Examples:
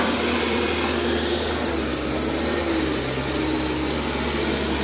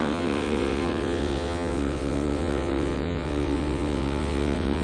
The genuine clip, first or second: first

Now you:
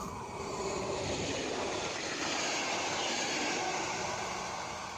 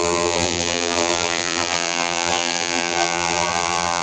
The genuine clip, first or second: first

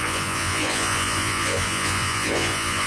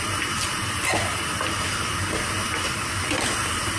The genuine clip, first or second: second